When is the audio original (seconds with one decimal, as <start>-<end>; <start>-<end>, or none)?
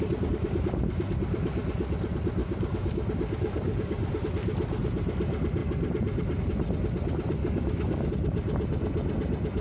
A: 0.0-2.4; 4.2-7.4; 8.1-9.6